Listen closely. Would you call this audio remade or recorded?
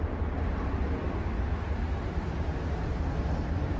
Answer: recorded